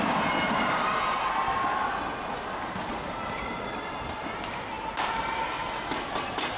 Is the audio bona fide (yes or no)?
yes